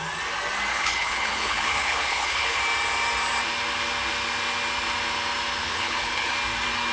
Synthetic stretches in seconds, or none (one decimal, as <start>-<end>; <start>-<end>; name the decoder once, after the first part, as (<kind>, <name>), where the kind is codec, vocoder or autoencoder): 0.7-2.6 (codec, HILCodec); 5.6-6.3